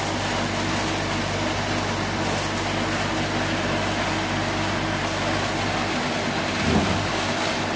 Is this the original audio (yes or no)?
yes